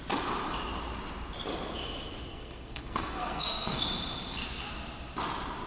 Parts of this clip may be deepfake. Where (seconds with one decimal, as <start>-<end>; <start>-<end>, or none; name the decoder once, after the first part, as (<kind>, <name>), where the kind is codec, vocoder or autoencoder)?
2.3-3.8 (codec, SNAC)